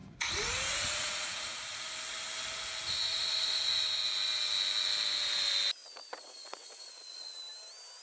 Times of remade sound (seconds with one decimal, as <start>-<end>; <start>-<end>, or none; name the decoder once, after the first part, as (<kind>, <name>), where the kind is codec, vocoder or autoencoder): 0.0-1.8 (vocoder, Vocos); 3.1-3.9; 5.8-7.4